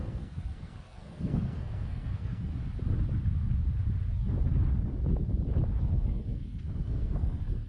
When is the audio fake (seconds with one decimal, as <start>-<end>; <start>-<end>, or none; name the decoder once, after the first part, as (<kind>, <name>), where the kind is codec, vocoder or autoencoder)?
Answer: 0.0-2.5 (codec, SNAC); 5.8-7.7